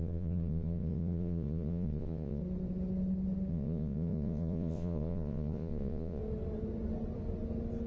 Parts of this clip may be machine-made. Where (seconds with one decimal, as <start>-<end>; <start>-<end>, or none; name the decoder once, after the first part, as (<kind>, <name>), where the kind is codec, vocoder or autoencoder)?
0.0-2.4 (vocoder, Vocos); 3.5-6.2